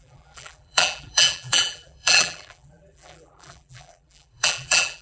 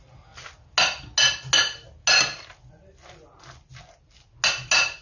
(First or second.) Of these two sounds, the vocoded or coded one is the first